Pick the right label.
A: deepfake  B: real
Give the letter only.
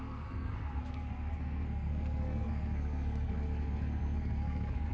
A